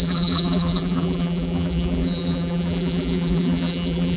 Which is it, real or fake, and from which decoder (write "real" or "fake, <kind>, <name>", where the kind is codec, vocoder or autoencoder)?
fake, vocoder, BigVGAN v2